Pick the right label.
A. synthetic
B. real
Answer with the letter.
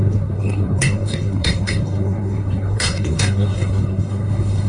A